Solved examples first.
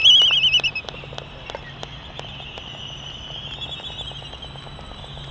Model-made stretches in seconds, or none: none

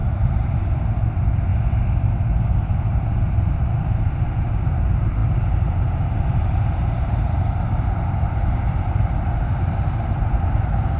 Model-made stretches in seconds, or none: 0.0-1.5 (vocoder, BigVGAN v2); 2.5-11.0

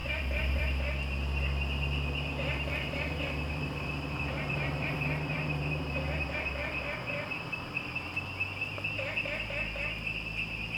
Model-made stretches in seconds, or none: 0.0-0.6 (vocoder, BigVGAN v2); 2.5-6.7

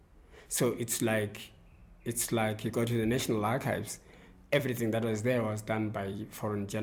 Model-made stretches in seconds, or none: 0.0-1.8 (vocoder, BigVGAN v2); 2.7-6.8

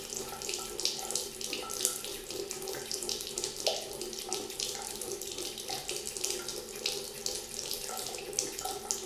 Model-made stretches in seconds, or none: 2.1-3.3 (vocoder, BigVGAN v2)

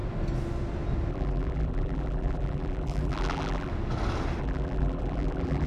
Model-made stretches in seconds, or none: 1.1-3.7 (vocoder, BigVGAN v2); 4.4-5.7

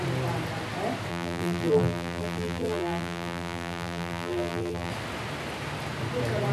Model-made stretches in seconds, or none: 1.1-4.9 (vocoder, BigVGAN v2)

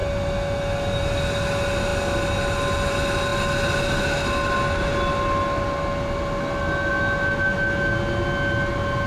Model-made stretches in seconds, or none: none